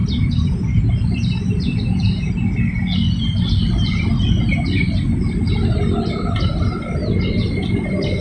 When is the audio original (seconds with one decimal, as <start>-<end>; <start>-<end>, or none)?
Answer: 2.3-8.2